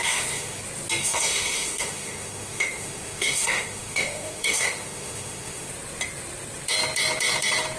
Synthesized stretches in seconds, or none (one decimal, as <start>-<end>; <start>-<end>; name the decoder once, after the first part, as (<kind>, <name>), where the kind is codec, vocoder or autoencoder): 0.0-0.6 (autoencoder, DAC-VAE); 1.0-5.7